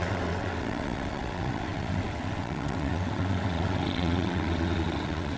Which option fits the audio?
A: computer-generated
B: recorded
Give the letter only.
A